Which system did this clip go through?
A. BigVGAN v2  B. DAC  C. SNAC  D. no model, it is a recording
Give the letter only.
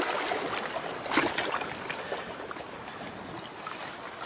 D